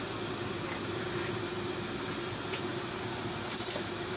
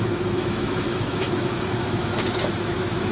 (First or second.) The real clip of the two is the first